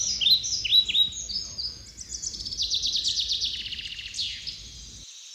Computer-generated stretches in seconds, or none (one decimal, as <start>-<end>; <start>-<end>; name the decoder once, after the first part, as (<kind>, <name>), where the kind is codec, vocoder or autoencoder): none